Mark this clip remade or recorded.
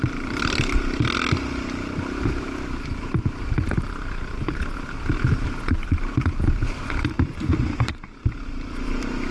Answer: remade